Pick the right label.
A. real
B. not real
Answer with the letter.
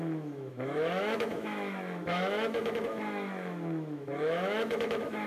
B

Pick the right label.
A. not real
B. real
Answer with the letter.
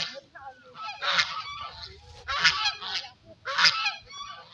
B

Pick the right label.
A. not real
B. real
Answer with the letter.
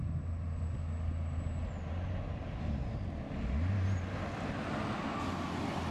B